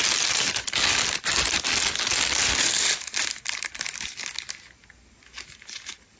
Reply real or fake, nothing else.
real